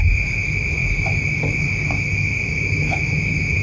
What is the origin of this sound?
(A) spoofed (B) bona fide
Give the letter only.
B